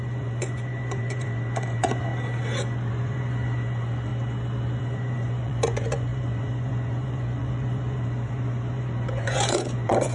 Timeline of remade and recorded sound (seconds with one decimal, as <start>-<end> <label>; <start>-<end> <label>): 0.0-2.1 remade; 2.1-2.9 recorded; 2.9-4.1 remade; 4.1-4.8 recorded; 4.8-10.1 remade